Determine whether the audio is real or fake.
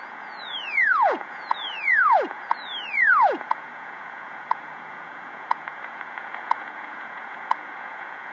fake